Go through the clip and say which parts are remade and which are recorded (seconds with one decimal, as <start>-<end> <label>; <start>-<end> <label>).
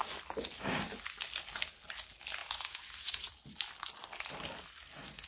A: 0.0-2.4 recorded; 2.4-3.3 remade; 3.3-5.3 recorded